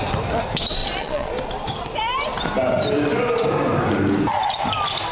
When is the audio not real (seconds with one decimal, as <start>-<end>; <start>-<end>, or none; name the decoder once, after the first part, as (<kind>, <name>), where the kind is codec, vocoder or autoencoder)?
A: 0.8-1.3 (vocoder, Vocos)